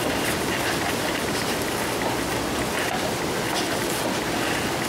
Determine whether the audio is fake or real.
real